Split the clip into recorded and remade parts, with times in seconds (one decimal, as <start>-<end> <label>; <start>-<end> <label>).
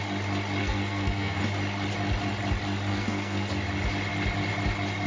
0.0-0.6 recorded; 0.6-1.4 remade; 1.4-2.9 recorded; 2.9-3.5 remade; 3.5-5.1 recorded